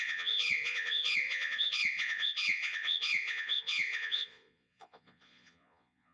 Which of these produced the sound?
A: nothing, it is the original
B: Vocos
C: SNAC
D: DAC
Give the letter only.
B